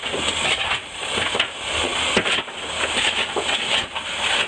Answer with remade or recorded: recorded